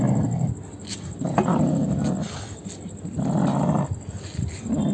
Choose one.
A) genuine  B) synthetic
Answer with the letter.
A